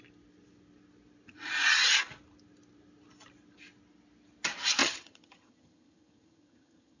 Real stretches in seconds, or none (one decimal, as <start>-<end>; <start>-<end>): 0.0-4.8

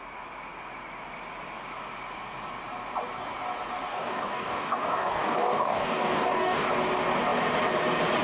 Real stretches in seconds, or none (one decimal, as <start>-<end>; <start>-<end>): 0.0-3.9; 6.7-8.2

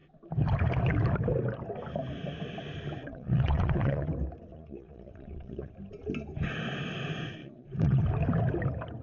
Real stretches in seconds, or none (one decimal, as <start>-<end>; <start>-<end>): 0.0-3.0; 4.1-4.5; 5.7-7.4; 8.0-9.0

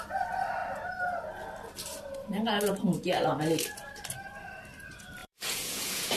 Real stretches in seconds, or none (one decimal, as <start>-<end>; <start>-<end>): 0.0-5.2

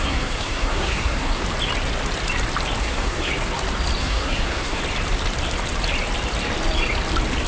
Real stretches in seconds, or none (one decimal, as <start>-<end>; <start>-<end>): 1.4-2.8; 3.3-4.0; 4.8-7.5

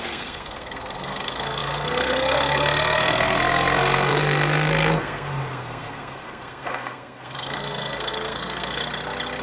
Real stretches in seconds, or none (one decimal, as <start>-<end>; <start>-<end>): 8.8-9.4

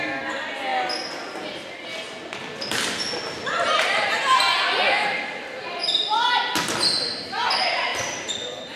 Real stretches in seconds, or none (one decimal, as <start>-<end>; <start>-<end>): 0.0-8.8